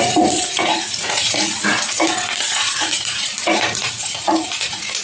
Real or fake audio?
fake